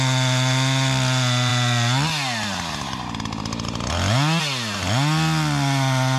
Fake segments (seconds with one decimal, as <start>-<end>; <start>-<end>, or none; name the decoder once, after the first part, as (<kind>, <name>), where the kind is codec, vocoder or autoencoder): none